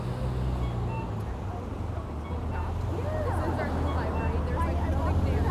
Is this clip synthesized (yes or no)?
no